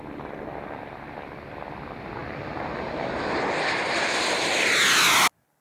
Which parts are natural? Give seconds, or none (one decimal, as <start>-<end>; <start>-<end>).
0.0-5.6